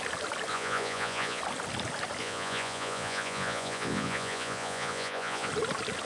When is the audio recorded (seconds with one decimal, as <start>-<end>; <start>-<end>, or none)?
0.0-0.5; 1.4-2.2; 5.5-6.1